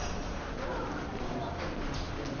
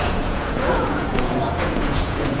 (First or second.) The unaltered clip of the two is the first